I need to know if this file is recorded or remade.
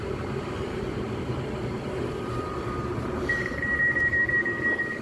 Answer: remade